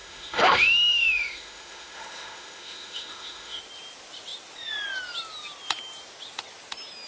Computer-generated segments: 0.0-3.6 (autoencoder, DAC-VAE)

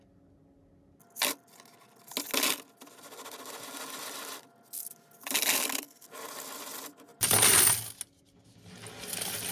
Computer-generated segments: none

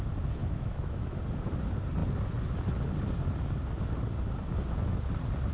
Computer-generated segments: 0.4-1.2 (autoencoder, DAC-VAE)

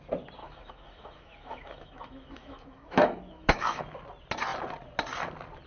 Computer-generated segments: 0.4-3.8 (autoencoder, DAC-VAE)

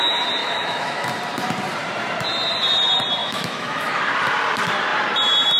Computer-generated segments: 0.4-1.2 (autoencoder, DAC-VAE); 3.2-4.0